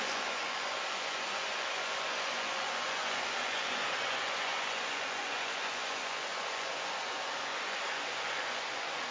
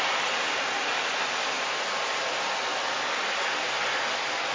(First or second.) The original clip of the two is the second